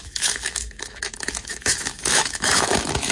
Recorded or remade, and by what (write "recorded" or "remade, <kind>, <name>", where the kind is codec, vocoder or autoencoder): remade, autoencoder, DAC-VAE